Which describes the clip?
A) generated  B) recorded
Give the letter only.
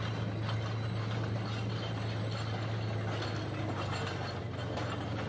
B